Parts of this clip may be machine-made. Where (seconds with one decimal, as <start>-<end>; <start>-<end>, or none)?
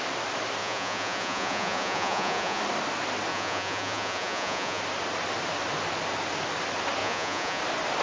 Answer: 0.6-2.6; 3.3-4.8; 7.0-7.6